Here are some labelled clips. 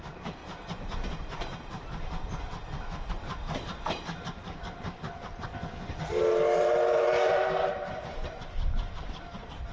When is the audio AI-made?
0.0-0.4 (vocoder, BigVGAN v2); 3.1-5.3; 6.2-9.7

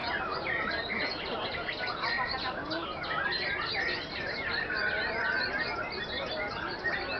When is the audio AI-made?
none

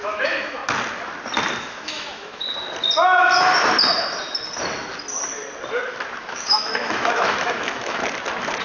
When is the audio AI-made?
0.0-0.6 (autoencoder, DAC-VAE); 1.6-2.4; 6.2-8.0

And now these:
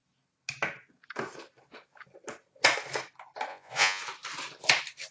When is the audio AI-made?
3.5-4.0 (vocoder, Vocos)